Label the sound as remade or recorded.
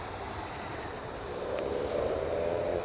remade